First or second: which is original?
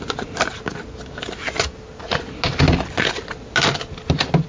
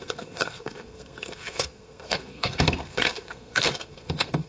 first